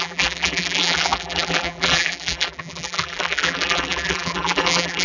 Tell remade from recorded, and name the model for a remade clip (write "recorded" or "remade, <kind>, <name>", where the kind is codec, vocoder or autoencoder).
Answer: remade, vocoder, BigVGAN v2